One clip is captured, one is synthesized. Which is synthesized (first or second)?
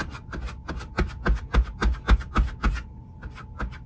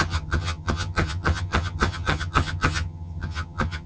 second